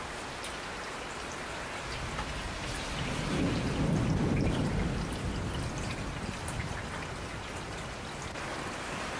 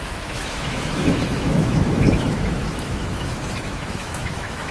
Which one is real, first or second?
first